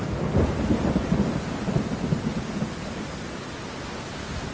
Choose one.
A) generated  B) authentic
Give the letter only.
B